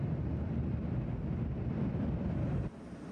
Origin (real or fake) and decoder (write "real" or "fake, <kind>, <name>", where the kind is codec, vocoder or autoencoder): fake, vocoder, BigVGAN v2